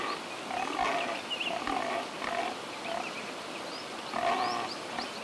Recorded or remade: recorded